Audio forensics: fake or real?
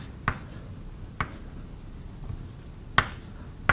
real